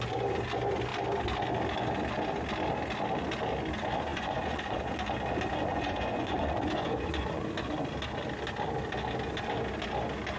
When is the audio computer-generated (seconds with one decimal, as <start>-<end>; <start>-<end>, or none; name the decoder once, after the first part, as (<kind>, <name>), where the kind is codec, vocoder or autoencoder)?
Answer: 4.1-4.9 (vocoder, Vocos); 5.7-7.5